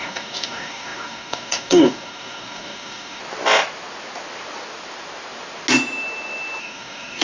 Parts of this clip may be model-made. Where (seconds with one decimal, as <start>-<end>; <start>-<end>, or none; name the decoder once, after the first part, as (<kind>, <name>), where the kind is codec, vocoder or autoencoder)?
0.0-3.2 (codec, DAC); 6.6-7.2